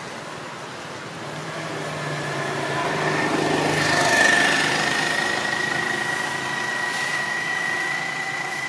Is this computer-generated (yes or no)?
no